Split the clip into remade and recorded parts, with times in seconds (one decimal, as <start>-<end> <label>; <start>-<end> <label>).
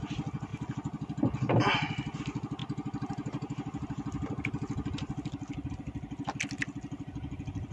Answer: 0.0-7.7 recorded